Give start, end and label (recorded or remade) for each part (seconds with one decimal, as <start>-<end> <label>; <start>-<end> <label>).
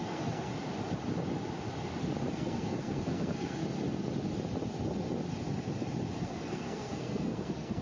0.0-0.5 remade; 0.5-2.3 recorded; 2.3-3.6 remade; 3.6-6.2 recorded; 6.2-7.8 remade